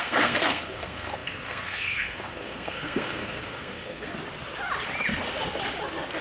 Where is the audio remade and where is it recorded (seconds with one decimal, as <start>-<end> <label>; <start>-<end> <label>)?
0.0-4.1 remade; 4.1-6.2 recorded